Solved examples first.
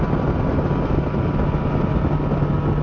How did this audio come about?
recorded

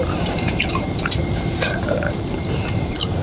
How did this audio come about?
remade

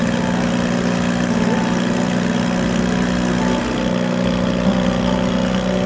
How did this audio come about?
recorded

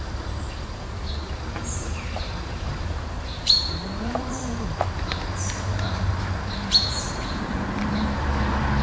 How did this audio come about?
remade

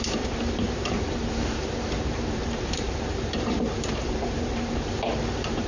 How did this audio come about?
remade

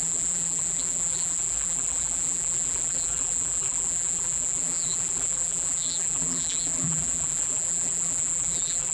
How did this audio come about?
remade